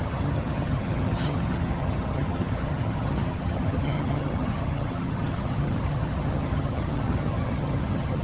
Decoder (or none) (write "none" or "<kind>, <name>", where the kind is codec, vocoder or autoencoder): vocoder, HiFi-GAN